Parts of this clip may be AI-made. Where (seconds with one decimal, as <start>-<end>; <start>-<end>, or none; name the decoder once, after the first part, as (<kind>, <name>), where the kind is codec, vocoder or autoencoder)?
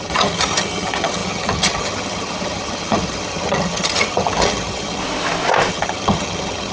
0.0-5.0 (vocoder, HiFi-GAN); 5.7-6.7